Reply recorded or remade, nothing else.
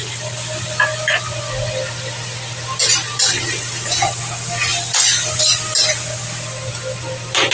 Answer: recorded